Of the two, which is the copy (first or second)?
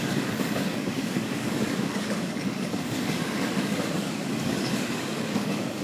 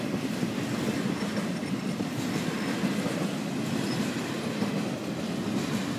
first